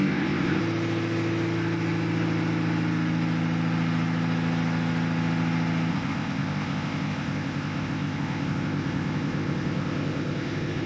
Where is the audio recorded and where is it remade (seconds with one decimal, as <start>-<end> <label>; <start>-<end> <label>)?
0.0-0.6 remade; 0.6-5.9 recorded; 5.9-10.9 remade